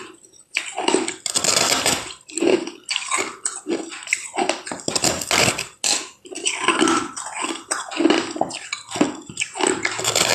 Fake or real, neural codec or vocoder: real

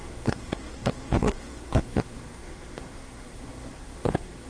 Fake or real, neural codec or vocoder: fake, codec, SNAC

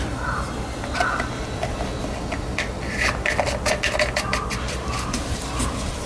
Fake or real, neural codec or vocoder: real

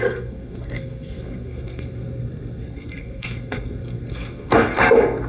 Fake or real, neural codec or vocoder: fake, codec, SNAC